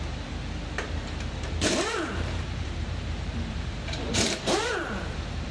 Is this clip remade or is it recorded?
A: remade